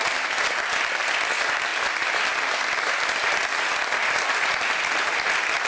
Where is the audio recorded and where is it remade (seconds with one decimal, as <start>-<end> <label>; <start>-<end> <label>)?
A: 0.0-5.7 recorded